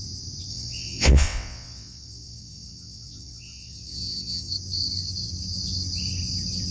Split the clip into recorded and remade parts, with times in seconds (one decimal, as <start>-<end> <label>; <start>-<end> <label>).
0.0-0.5 recorded; 0.5-4.5 remade; 4.5-6.7 recorded